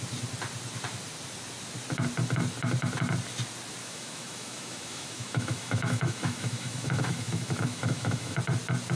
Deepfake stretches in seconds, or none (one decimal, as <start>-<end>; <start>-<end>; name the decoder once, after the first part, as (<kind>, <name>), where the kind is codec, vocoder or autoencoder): 3.8-8.4 (autoencoder, DAC-VAE)